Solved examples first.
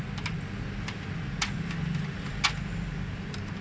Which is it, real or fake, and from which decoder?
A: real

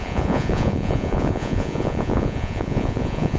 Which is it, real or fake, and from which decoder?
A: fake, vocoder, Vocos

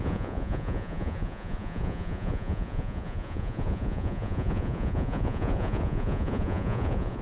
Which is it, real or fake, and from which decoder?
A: fake, vocoder, Vocos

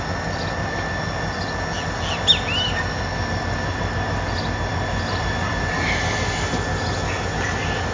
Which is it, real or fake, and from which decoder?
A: real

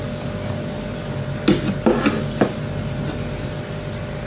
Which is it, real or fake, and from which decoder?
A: real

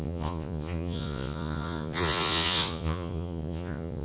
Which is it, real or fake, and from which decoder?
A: fake, vocoder, Vocos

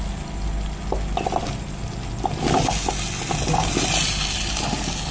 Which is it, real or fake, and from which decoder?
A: real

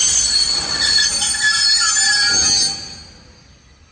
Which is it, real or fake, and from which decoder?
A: real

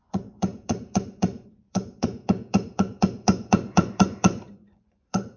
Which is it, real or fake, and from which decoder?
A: fake, vocoder, Vocos